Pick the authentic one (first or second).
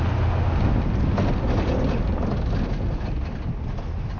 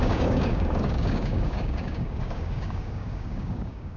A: first